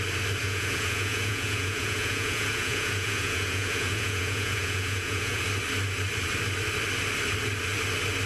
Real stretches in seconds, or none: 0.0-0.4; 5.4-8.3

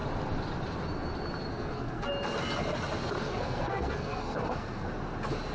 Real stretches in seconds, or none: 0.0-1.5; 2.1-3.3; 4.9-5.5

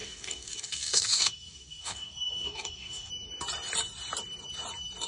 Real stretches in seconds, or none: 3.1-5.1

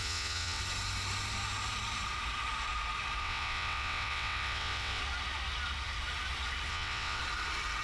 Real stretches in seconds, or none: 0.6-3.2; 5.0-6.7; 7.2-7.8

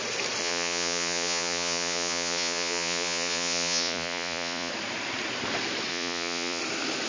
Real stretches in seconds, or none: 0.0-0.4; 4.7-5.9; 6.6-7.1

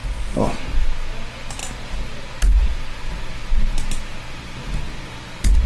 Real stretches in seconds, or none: 0.0-5.7

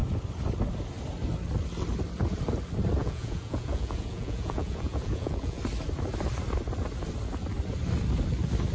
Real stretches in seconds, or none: 0.0-3.0; 5.6-8.7

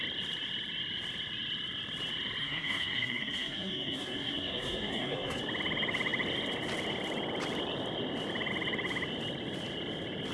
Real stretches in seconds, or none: 0.0-2.4; 5.4-10.3